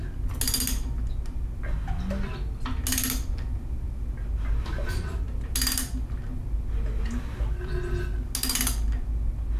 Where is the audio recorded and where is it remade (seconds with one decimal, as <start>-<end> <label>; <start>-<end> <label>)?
0.0-9.6 recorded